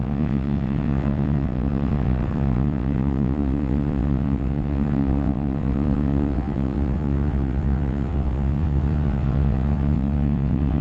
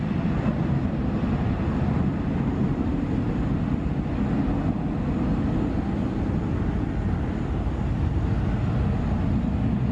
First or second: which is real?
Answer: second